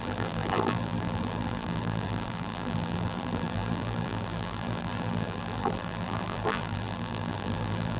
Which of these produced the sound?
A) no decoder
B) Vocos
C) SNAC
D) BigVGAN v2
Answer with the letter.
D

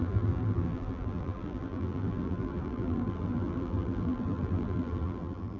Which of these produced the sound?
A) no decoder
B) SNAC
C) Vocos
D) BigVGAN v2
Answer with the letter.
D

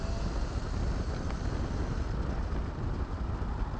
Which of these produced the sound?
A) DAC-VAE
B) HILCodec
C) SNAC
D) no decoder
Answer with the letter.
D